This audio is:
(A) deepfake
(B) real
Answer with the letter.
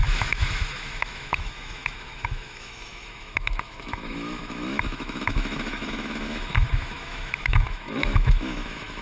A